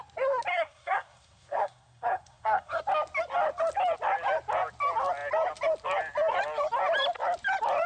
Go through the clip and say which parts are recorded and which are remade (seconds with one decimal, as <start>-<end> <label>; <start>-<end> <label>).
0.0-0.5 recorded; 0.5-2.8 remade; 2.8-7.9 recorded